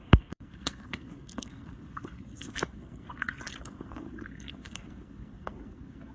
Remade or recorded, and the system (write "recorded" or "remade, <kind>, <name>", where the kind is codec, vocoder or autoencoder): remade, codec, SNAC